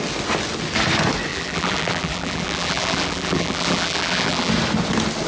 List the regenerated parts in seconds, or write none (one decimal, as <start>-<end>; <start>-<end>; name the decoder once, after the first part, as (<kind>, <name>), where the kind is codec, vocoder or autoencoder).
1.3-4.5 (vocoder, BigVGAN v2)

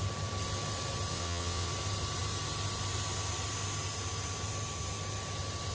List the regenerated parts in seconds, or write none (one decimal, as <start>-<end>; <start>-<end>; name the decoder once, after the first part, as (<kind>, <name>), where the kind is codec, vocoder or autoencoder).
1.1-1.7 (vocoder, WaveNeXt)

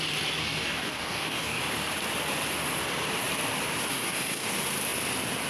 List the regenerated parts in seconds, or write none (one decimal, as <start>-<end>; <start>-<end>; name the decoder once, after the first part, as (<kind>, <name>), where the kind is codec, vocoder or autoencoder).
0.4-1.6 (codec, DAC); 3.9-4.5

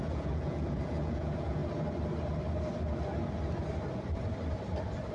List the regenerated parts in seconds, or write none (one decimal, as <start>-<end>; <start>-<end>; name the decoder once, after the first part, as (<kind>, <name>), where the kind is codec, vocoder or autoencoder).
0.0-1.6 (vocoder, Vocos)